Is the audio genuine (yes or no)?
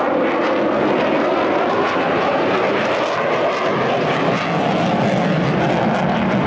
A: yes